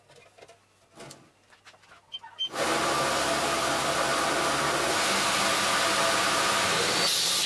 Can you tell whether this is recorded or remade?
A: recorded